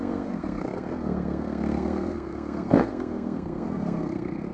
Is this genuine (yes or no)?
no